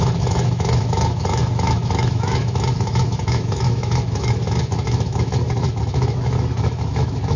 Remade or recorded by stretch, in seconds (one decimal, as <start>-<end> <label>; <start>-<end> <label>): 0.0-7.4 remade